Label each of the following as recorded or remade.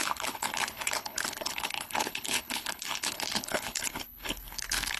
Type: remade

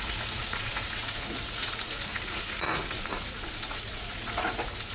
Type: remade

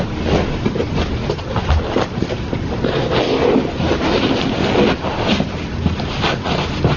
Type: recorded